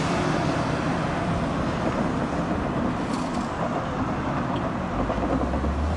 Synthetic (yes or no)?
no